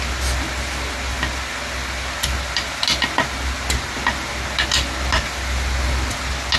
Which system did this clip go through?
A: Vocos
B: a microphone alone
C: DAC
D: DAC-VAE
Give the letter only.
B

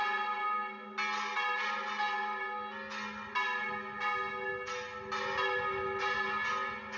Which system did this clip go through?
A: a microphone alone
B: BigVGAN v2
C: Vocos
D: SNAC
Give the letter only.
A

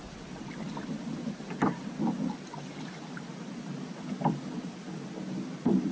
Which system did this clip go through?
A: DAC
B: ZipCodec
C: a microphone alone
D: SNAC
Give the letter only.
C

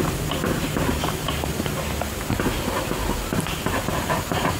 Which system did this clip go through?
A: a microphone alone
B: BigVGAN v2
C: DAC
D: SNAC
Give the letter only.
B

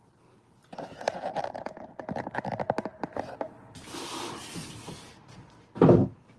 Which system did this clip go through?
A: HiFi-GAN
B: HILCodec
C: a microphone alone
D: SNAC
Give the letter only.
C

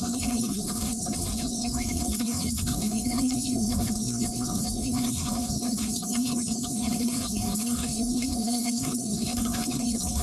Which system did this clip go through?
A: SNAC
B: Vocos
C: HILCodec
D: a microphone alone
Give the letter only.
A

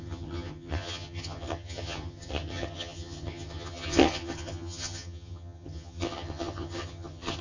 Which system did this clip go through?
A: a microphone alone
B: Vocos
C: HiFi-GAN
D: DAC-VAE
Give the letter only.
C